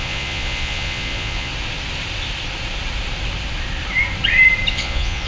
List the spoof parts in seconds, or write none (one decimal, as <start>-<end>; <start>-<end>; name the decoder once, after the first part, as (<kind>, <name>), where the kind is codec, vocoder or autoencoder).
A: 0.0-1.5 (vocoder, Vocos); 4.7-5.3